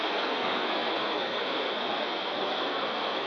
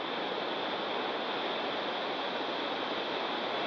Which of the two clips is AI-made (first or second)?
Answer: first